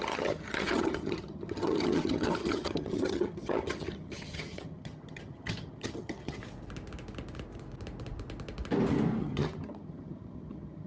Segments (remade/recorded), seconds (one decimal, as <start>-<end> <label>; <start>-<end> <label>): 0.0-6.4 remade; 6.4-9.2 recorded; 9.2-10.9 remade